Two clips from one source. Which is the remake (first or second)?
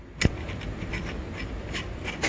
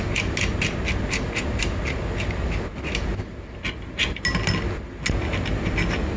first